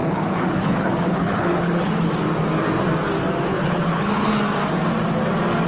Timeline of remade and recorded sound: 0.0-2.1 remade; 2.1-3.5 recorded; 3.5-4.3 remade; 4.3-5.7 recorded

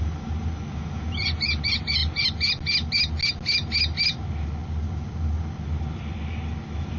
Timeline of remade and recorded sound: 0.0-7.0 recorded